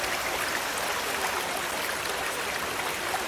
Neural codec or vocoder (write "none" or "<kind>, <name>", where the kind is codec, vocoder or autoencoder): none